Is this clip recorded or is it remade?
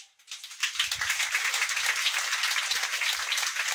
recorded